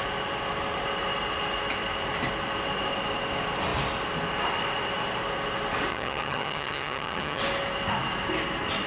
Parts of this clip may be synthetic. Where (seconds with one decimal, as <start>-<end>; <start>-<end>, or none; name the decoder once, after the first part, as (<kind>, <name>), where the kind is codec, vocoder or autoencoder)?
5.9-7.4 (vocoder, HiFi-GAN)